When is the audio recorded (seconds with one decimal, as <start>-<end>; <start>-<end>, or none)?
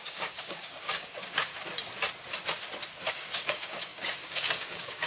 1.5-3.1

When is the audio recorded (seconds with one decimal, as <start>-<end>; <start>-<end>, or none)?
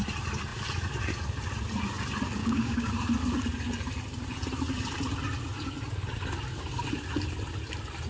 0.0-2.4; 2.9-8.1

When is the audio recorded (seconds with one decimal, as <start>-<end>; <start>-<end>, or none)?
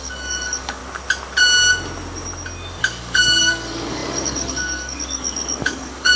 0.8-2.8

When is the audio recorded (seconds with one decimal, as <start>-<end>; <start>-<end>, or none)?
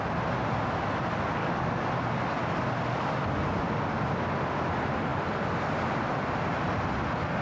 0.0-1.4; 1.9-7.4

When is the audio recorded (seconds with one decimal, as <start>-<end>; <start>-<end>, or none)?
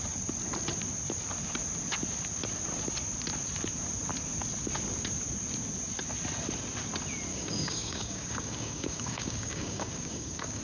0.0-7.3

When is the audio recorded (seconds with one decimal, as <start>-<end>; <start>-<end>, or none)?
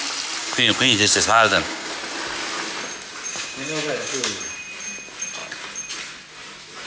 0.0-0.4; 1.9-3.3; 4.4-6.9